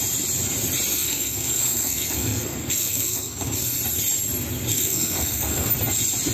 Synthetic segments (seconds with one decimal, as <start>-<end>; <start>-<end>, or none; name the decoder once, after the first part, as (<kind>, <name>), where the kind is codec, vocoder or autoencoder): 0.9-3.8 (codec, SNAC); 4.7-5.7